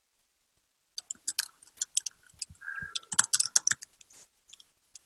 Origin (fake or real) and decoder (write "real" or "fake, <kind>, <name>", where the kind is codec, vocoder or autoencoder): real